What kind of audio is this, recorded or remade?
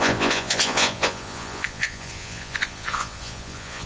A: remade